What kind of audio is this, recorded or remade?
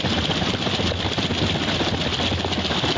recorded